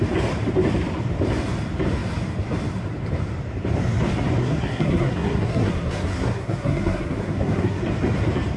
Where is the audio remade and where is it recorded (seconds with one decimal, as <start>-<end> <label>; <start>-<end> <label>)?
0.0-4.4 recorded; 4.4-7.8 remade; 7.8-8.6 recorded